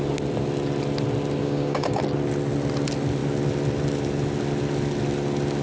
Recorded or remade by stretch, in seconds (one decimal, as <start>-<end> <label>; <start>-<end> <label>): 0.0-1.4 recorded; 1.4-2.0 remade; 2.0-5.6 recorded